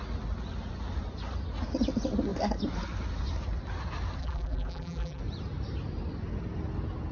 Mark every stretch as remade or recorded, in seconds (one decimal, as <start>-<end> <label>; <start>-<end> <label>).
0.0-4.2 recorded; 4.2-5.2 remade; 5.2-7.1 recorded